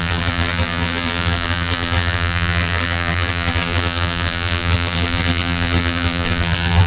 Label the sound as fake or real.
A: fake